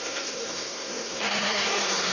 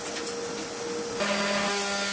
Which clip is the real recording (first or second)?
second